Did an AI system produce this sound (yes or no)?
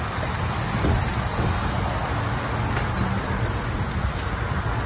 no